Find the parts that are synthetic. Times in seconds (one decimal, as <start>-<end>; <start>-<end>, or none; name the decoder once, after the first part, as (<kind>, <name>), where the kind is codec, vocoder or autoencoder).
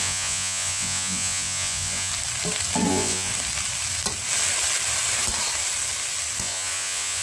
0.0-2.1 (vocoder, Vocos); 2.9-3.3; 6.4-7.2